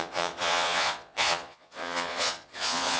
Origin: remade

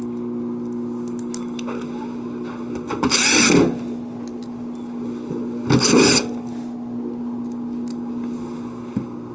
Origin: recorded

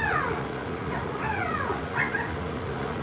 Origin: remade